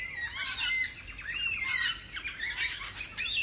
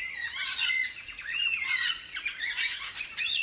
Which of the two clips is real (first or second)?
first